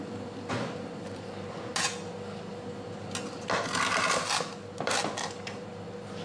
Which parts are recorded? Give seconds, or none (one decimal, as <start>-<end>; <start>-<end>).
0.0-6.2